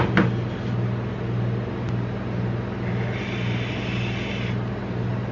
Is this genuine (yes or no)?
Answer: yes